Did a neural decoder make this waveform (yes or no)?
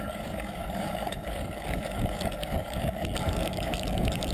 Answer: yes